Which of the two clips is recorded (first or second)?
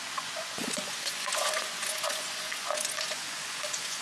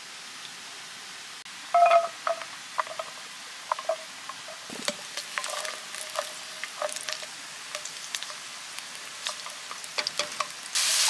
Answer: second